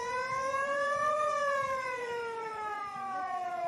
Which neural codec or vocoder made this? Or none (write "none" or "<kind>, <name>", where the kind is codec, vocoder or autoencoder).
vocoder, Vocos